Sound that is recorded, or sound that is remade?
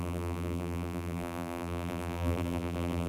remade